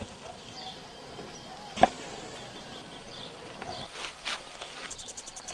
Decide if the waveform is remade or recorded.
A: recorded